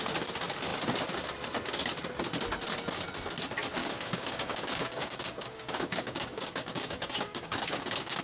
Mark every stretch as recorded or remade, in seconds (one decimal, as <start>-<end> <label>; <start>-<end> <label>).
0.0-3.8 recorded; 3.8-8.2 remade